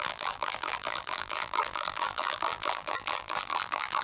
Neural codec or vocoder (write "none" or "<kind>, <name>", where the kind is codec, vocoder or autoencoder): vocoder, BigVGAN v2